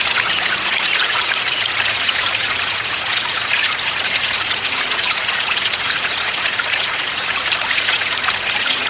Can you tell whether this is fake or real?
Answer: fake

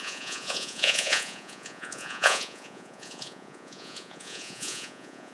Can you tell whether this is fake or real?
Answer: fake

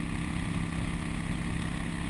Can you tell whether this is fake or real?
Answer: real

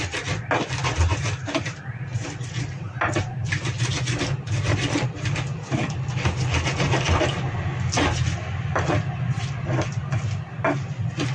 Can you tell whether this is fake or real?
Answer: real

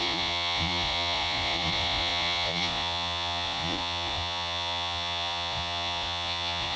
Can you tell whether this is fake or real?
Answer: fake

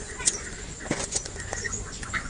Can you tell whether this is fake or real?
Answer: fake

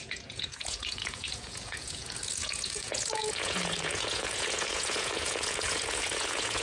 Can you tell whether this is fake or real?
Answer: fake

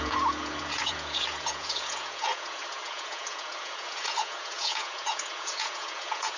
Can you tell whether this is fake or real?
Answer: fake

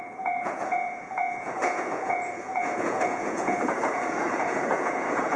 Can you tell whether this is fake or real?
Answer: fake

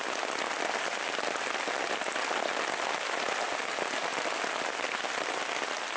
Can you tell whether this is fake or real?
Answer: real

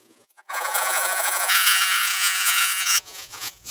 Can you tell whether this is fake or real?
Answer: fake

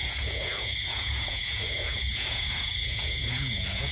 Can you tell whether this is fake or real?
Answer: fake